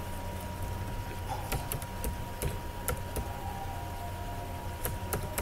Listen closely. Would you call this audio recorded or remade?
recorded